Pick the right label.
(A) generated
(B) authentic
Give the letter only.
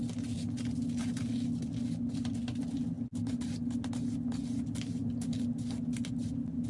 B